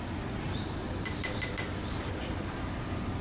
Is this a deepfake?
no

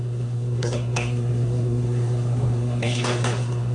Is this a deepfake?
yes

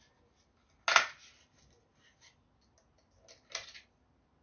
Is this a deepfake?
no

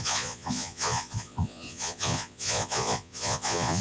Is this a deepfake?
yes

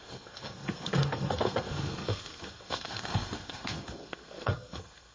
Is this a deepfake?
yes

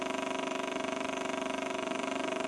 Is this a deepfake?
yes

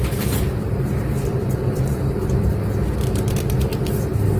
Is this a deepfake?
no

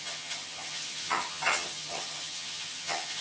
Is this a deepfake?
yes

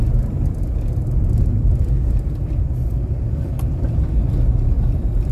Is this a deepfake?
no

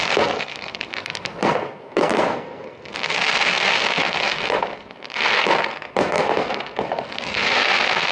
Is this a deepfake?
yes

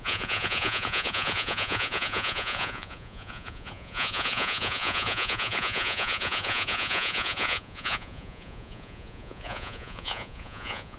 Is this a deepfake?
yes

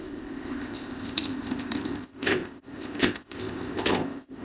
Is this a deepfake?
yes